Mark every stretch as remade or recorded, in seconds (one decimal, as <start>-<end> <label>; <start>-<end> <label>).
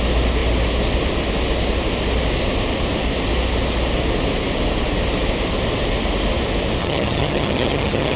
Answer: 0.0-6.8 recorded; 6.8-8.2 remade